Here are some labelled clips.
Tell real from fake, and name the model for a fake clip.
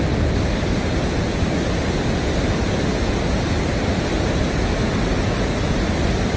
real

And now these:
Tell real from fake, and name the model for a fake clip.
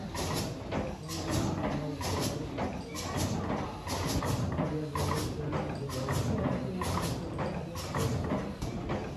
real